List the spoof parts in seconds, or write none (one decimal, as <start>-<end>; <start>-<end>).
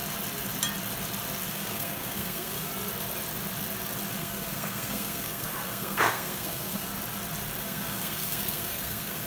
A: 1.5-2.7; 4.2-6.9; 7.6-9.3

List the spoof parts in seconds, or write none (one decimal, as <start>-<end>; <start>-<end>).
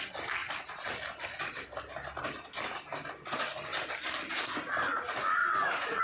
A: 3.7-4.7; 5.4-6.0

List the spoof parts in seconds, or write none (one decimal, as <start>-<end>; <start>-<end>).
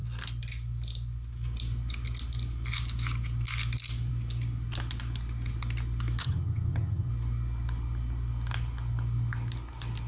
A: 6.2-7.1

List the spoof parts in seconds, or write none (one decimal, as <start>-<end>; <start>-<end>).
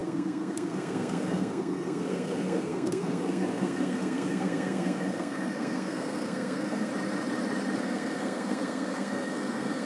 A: 0.0-6.9; 7.8-9.9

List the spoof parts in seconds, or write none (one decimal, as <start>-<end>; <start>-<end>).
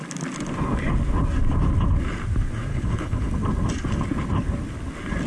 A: 2.7-3.3